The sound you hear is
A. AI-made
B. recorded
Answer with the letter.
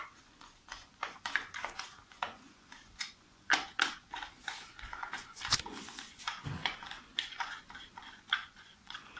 A